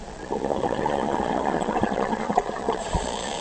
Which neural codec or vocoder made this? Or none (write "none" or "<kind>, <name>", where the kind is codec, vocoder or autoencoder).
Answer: vocoder, Vocos